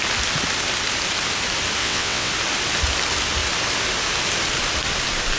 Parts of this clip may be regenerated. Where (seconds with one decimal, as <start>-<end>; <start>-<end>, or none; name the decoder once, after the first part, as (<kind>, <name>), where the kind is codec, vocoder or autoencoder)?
1.8-2.3 (vocoder, WaveNeXt)